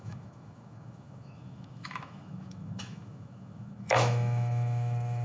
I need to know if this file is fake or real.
fake